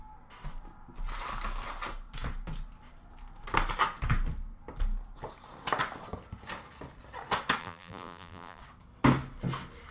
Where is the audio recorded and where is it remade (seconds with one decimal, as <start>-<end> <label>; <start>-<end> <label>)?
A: 0.0-7.6 recorded; 7.6-8.6 remade; 8.6-9.9 recorded

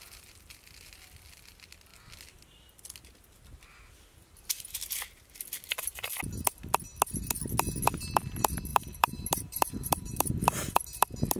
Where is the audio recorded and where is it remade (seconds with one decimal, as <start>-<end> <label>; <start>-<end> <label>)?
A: 0.0-8.7 recorded; 8.7-10.8 remade; 10.8-11.4 recorded

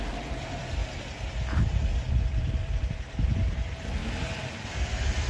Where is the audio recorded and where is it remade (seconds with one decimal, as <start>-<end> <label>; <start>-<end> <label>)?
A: 0.0-4.0 remade; 4.0-4.7 recorded; 4.7-5.3 remade

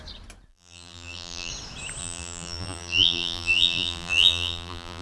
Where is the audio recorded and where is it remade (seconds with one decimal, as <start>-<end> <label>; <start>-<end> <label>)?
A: 0.0-0.5 recorded; 0.5-1.5 remade; 1.5-2.0 recorded; 2.0-5.0 remade

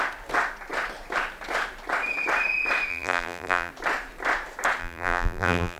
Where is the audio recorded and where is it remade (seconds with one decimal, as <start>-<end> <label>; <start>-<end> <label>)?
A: 0.0-2.9 recorded; 2.9-3.7 remade; 3.7-4.8 recorded; 4.8-5.8 remade

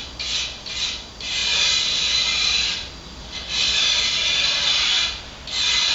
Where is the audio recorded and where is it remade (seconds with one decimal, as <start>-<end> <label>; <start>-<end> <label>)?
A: 0.0-1.4 recorded; 1.4-4.9 remade; 4.9-5.9 recorded

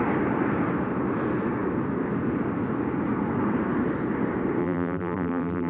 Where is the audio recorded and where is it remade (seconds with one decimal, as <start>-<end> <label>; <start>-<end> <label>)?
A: 0.0-4.6 recorded; 4.6-5.7 remade

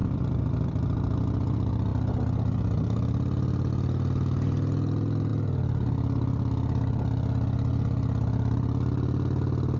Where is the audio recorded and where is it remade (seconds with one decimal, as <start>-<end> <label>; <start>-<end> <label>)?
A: 0.0-1.2 remade; 1.2-9.8 recorded